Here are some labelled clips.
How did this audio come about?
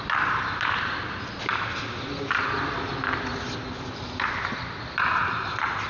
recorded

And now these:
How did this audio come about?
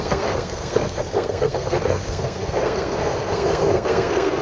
remade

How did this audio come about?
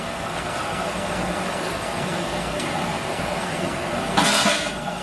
remade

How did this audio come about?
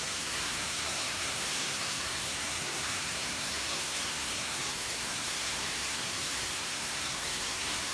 remade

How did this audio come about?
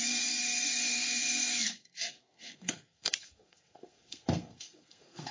remade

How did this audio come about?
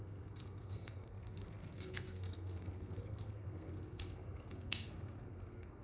remade